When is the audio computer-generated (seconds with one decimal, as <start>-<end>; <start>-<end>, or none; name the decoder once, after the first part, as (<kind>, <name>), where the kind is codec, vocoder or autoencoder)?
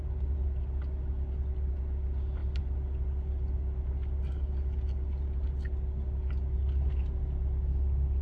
none